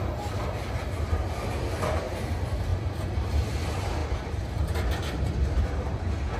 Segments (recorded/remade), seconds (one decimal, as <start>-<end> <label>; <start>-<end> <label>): 0.0-4.0 recorded; 4.0-5.5 remade; 5.5-6.4 recorded